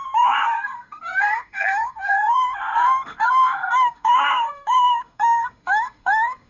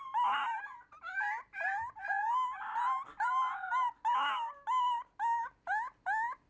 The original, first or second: second